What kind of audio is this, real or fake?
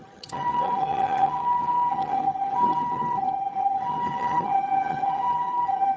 fake